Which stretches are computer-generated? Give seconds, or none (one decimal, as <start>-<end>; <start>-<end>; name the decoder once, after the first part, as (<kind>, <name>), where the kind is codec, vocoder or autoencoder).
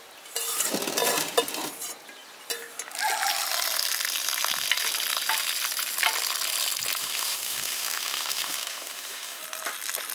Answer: 7.0-9.4 (autoencoder, DAC-VAE)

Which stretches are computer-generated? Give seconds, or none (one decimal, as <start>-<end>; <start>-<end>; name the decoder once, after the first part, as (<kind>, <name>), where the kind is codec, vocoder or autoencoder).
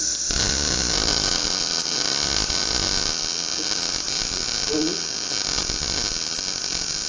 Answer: none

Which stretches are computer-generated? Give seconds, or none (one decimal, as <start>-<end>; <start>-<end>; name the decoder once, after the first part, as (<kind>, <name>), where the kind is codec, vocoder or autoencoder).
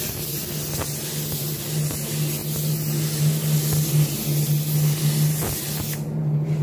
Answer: none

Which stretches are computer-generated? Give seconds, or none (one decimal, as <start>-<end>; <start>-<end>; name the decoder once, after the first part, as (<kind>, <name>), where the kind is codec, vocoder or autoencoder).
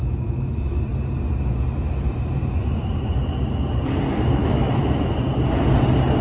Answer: 0.0-0.8 (autoencoder, DAC-VAE); 4.4-5.1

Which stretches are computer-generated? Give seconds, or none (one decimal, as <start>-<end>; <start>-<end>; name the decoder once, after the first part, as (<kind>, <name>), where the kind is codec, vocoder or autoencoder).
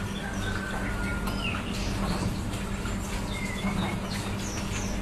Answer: none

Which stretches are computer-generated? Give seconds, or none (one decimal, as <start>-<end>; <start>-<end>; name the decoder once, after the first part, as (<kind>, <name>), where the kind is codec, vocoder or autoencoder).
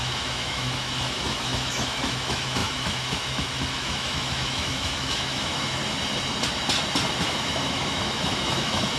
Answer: 0.0-5.8 (autoencoder, DAC-VAE); 7.2-9.0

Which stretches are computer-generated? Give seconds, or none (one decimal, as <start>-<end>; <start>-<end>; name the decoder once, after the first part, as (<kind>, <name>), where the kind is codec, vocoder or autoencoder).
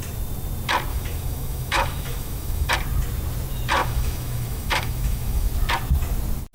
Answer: 0.9-2.7 (autoencoder, DAC-VAE); 3.8-5.5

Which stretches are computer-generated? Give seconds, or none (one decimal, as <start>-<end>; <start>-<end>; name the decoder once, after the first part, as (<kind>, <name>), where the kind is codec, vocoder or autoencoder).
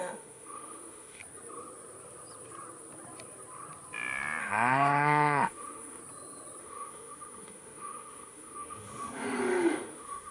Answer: 0.0-1.2 (autoencoder, DAC-VAE); 4.4-6.0; 6.6-10.3